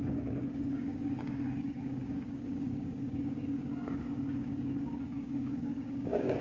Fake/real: fake